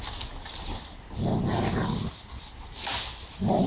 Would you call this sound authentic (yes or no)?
yes